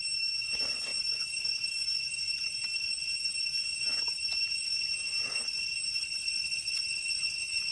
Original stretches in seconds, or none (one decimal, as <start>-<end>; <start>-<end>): 0.0-6.0